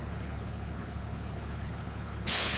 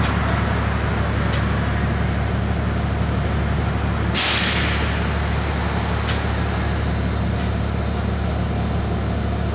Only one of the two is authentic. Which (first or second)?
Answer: second